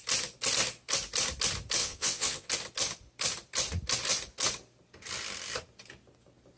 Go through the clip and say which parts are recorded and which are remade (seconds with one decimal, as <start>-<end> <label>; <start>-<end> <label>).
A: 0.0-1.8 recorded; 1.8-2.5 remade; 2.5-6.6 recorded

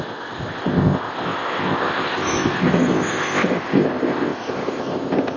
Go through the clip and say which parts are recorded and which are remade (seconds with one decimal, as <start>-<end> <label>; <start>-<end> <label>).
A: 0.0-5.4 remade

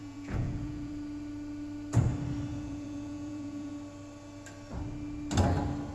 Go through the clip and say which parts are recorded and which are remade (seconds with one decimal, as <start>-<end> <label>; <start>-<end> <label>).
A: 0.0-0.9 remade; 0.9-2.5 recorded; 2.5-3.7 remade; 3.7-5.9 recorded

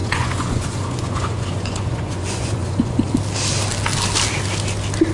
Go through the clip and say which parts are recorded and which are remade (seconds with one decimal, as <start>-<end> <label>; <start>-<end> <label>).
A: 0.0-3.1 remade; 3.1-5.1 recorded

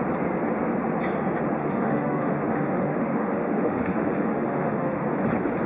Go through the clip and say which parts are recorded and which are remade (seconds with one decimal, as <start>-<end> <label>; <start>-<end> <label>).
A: 0.0-1.6 recorded; 1.6-5.0 remade; 5.0-5.7 recorded

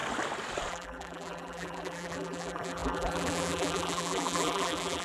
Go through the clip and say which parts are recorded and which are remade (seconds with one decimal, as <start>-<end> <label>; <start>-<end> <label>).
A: 0.0-0.7 recorded; 0.7-5.0 remade

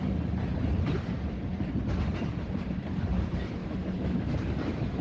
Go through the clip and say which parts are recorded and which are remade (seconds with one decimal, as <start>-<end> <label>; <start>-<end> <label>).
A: 0.0-3.6 recorded; 3.6-4.3 remade; 4.3-5.0 recorded